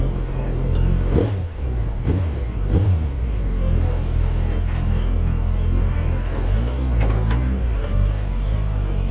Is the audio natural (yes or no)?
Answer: no